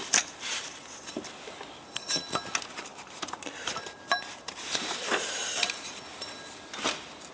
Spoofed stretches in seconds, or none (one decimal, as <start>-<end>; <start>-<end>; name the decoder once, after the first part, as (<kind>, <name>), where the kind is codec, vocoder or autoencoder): 0.0-0.8 (vocoder, BigVGAN v2); 2.9-5.9